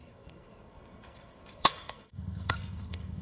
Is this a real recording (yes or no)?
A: no